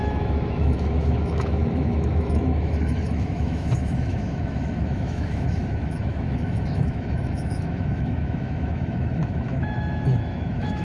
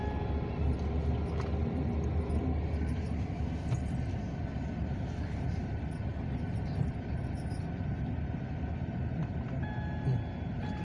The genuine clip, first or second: second